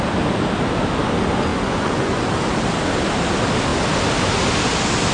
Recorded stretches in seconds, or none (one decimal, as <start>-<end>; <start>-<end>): 0.0-1.5; 2.2-5.1